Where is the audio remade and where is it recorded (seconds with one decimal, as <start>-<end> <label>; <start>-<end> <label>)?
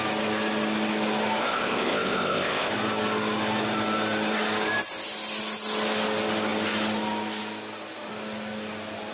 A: 0.0-1.4 recorded; 1.4-2.7 remade; 2.7-9.1 recorded